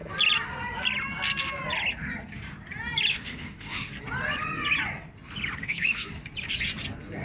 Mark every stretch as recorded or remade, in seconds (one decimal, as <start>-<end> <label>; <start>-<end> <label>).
0.0-3.1 recorded; 3.1-3.9 remade; 3.9-5.6 recorded; 5.6-6.1 remade; 6.1-7.2 recorded